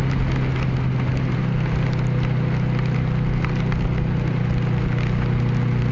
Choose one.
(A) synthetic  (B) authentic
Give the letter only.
B